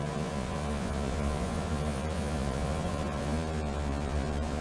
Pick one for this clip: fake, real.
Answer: fake